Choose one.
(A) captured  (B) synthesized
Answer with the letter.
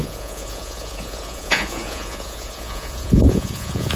B